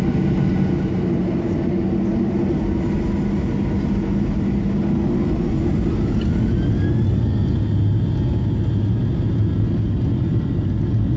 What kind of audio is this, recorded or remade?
recorded